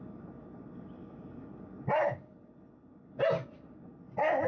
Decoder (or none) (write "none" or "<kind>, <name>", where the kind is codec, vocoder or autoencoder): none